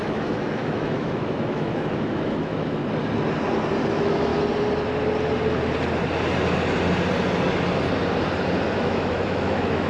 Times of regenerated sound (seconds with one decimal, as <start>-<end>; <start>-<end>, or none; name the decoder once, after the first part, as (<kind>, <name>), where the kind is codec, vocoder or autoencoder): 0.0-2.8 (autoencoder, DAC-VAE); 3.9-4.3; 8.8-9.9